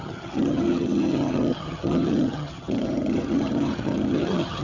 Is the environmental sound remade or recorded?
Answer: remade